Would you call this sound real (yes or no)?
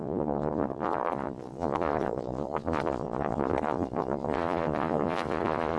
no